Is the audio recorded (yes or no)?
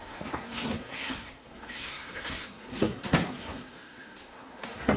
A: no